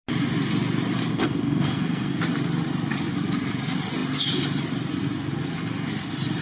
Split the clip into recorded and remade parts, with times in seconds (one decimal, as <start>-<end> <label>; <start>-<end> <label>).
0.0-1.1 recorded; 1.1-2.2 remade; 2.2-6.4 recorded